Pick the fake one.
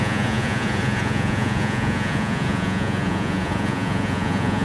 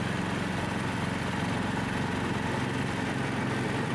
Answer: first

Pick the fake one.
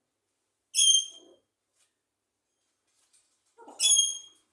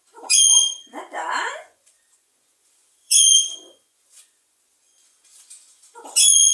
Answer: second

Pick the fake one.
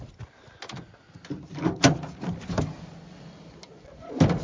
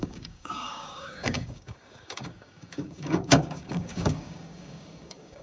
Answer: second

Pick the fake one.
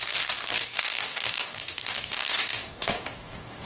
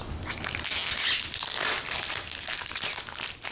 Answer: first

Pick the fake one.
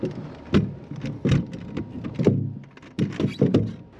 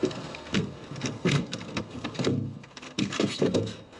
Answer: second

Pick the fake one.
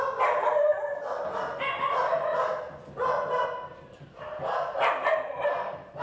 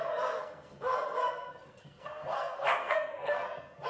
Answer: second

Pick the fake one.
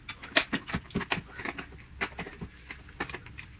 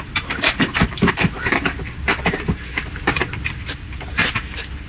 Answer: second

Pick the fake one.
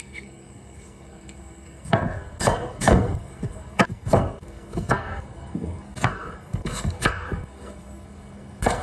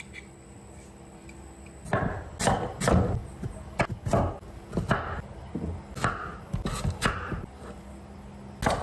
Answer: first